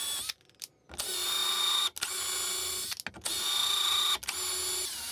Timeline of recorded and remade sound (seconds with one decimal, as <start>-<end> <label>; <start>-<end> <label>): 0.0-5.1 recorded